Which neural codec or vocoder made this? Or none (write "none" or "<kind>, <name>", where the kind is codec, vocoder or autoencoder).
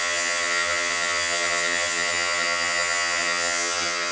vocoder, HiFi-GAN